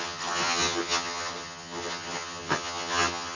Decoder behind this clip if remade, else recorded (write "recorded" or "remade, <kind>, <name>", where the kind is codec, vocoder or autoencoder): remade, vocoder, HiFi-GAN